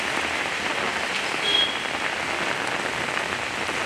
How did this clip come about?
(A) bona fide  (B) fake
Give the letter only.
A